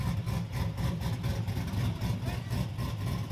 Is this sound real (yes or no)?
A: yes